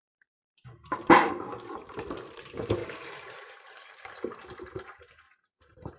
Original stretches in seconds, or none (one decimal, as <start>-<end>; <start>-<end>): none